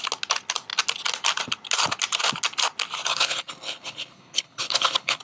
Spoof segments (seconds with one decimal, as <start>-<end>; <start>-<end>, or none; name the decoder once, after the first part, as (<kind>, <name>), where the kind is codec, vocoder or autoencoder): 3.1-5.2 (codec, HILCodec)